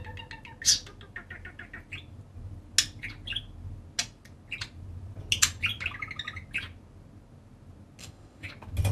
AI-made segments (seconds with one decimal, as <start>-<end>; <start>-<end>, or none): 8.0-8.5